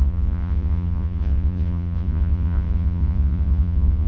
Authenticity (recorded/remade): remade